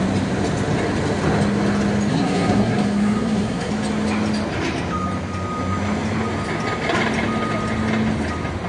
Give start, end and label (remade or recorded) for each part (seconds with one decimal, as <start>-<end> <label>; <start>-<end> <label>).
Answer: 0.0-2.1 recorded; 2.1-3.7 remade; 3.7-8.7 recorded